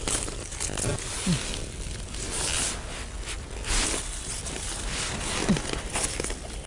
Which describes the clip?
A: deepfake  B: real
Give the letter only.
B